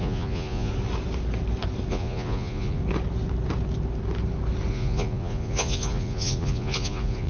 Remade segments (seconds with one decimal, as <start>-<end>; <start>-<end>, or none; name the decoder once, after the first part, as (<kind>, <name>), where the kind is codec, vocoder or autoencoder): 0.0-0.7 (vocoder, Vocos); 1.9-2.8; 4.7-7.3